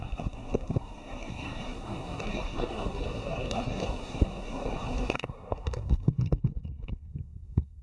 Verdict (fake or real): fake